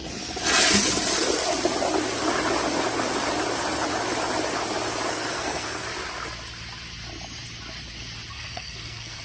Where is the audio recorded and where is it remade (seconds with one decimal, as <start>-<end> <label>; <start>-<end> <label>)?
0.0-5.1 recorded; 5.1-5.9 remade; 5.9-8.3 recorded; 8.3-9.2 remade